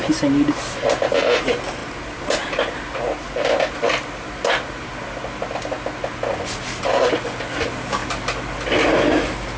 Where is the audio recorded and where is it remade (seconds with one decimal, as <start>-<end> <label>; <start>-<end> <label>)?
0.0-9.6 recorded